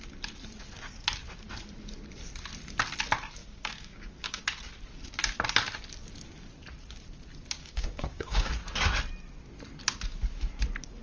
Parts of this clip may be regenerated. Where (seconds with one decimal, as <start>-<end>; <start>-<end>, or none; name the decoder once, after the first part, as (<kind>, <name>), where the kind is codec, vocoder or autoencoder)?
3.4-4.4 (codec, DAC); 7.6-8.5